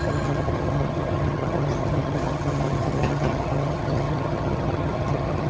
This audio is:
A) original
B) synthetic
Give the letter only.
B